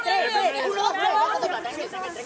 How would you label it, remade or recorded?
recorded